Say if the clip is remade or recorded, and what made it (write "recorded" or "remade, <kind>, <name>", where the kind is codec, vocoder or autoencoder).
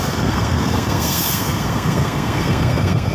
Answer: remade, codec, SNAC